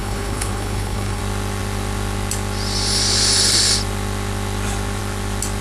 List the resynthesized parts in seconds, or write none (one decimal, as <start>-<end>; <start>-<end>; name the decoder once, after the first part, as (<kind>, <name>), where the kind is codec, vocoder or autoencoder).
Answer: 0.0-1.2 (codec, HILCodec)